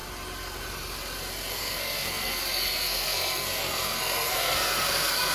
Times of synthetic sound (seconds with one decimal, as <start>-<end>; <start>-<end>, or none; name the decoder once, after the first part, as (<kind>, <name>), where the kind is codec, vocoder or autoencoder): 1.5-5.3 (codec, SNAC)